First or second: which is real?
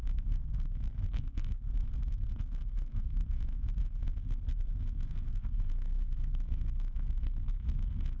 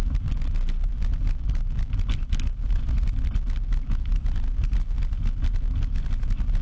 second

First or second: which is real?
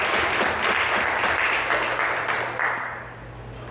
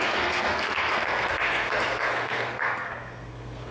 first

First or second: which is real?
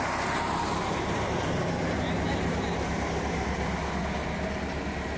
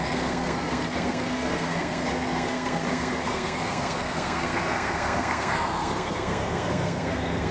first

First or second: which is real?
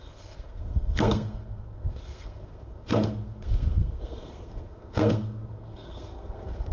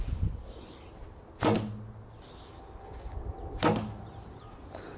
second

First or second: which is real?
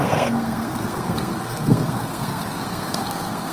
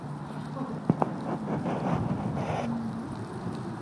second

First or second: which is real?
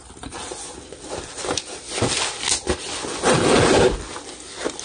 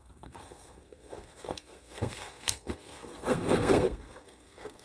first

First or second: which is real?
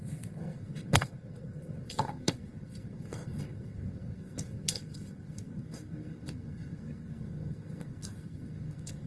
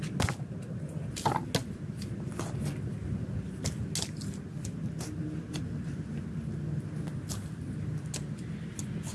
second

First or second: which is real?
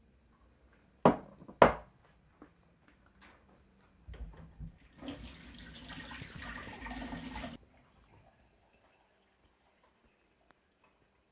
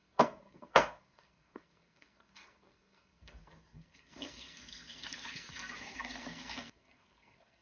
first